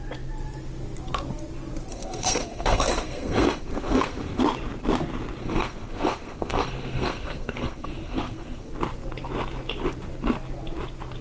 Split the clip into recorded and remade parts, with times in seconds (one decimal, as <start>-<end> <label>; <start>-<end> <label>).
0.0-1.9 recorded; 1.9-4.4 remade; 4.4-5.4 recorded; 5.4-8.7 remade; 8.7-11.2 recorded